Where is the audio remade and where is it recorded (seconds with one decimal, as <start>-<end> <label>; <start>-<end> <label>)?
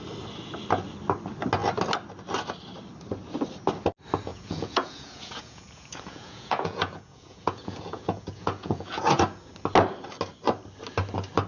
0.0-4.3 recorded; 4.3-9.2 remade; 9.2-11.5 recorded